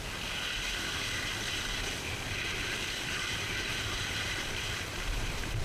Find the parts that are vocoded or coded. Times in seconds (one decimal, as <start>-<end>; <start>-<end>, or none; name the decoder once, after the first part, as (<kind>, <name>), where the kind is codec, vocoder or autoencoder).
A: 2.5-5.6 (vocoder, BigVGAN v2)